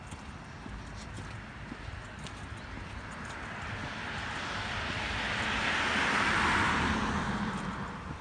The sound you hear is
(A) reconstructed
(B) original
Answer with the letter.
B